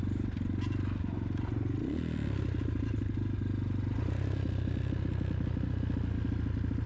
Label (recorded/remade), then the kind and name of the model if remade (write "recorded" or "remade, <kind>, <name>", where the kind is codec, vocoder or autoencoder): recorded